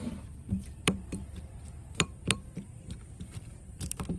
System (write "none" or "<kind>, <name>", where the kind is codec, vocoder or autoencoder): vocoder, BigVGAN v2